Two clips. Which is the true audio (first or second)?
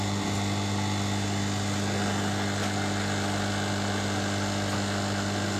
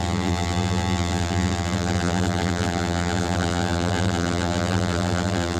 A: first